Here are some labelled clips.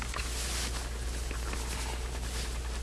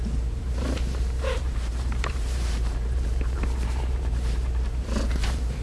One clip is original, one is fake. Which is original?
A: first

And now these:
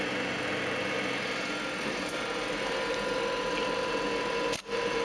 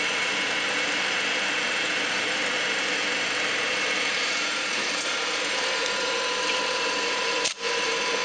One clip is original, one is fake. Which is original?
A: first